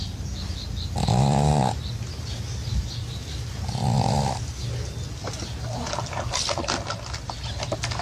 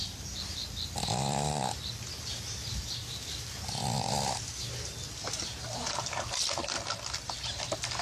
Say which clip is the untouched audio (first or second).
first